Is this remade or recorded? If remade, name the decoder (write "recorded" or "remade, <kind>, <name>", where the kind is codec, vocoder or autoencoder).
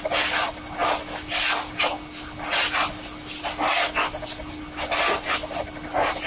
recorded